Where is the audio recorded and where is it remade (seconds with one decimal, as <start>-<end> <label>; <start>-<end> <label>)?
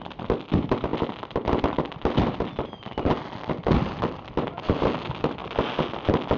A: 0.0-6.4 recorded